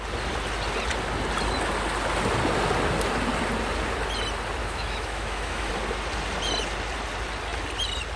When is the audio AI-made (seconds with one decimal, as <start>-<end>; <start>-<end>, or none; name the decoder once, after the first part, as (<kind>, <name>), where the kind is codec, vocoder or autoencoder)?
4.6-5.7 (autoencoder, DAC-VAE)

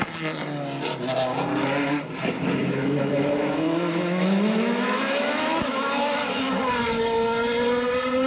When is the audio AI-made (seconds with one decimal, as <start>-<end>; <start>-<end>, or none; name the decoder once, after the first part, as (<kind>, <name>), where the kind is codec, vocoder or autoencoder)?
2.6-6.5 (autoencoder, DAC-VAE)

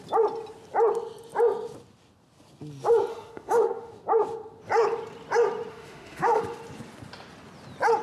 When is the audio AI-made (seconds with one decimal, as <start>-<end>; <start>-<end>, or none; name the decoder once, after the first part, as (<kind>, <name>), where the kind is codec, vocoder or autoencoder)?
3.1-3.9 (autoencoder, DAC-VAE); 5.7-6.4

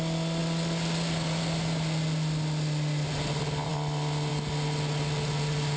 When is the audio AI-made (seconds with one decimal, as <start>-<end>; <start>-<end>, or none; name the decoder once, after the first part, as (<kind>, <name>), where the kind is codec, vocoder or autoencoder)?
none

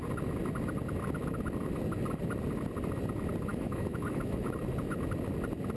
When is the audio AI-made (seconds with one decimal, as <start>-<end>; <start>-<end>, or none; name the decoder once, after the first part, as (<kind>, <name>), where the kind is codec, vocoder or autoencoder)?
3.5-4.4 (autoencoder, DAC-VAE)

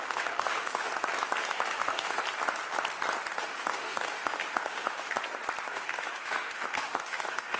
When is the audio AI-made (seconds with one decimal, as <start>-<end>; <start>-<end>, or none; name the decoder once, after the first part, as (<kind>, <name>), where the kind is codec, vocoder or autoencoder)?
0.0-0.9 (autoencoder, DAC-VAE); 1.5-2.2; 3.4-5.2; 5.7-7.6